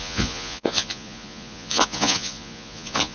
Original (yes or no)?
no